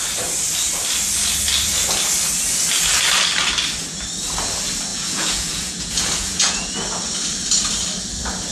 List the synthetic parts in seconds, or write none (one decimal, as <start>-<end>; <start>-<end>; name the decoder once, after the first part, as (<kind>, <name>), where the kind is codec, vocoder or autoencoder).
4.9-6.7 (vocoder, Vocos)